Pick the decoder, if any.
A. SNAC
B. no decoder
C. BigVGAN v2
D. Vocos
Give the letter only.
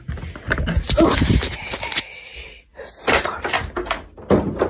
B